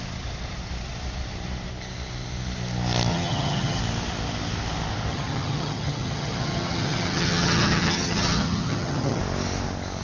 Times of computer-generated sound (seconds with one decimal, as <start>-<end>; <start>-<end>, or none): 3.1-3.8; 5.1-9.2